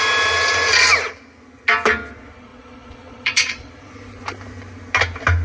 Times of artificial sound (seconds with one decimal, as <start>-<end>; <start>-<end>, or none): 2.5-3.9